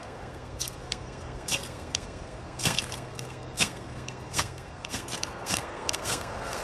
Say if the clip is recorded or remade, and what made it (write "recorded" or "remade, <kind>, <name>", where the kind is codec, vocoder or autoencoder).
remade, codec, SNAC